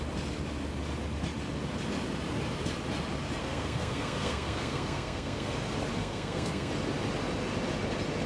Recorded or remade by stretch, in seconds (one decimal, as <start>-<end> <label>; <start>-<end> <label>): 0.0-3.4 recorded; 3.4-5.5 remade; 5.5-6.0 recorded; 6.0-6.7 remade; 6.7-8.3 recorded